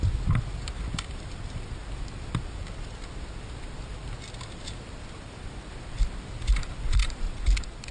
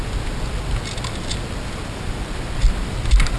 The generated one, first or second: first